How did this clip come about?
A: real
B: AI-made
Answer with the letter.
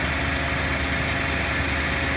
A